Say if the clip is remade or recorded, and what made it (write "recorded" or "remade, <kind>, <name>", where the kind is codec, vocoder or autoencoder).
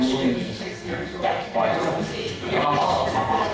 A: remade, codec, SNAC